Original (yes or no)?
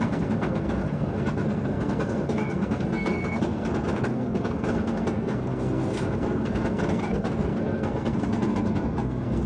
no